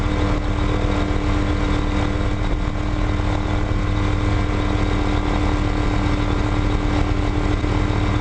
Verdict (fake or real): real